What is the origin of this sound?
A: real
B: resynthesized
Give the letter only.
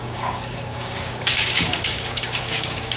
B